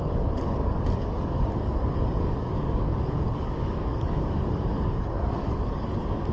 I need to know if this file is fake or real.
fake